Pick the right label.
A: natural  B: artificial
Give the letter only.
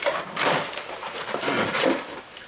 B